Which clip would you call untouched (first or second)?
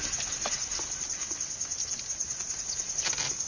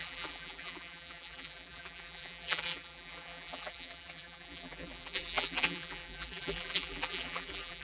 first